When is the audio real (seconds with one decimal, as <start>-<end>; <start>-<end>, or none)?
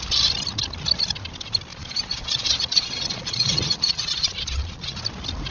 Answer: 0.0-1.7; 5.0-5.5